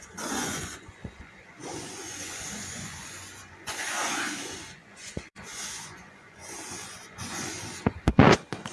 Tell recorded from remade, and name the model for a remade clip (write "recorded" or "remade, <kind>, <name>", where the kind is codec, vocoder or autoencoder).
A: remade, vocoder, Vocos